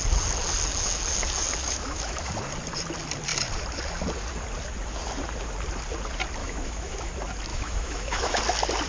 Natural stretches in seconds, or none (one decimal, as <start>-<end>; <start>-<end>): 0.0-1.6; 2.3-6.4; 7.1-7.5; 8.4-8.9